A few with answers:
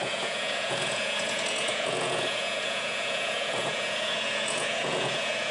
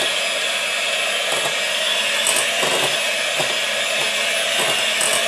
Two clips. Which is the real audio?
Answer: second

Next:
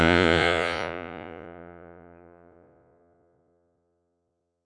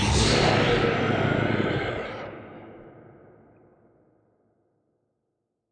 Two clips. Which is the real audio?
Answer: second